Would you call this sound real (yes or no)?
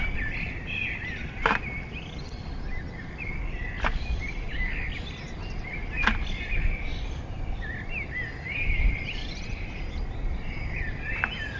yes